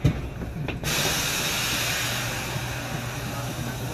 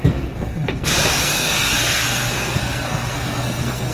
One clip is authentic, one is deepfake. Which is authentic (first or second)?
first